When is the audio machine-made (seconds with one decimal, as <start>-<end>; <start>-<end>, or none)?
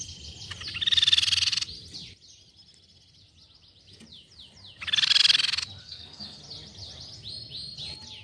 5.8-6.4